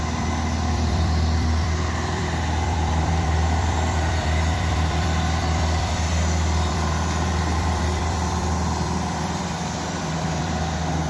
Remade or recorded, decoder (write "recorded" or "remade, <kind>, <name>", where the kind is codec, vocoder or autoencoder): remade, vocoder, BigVGAN v2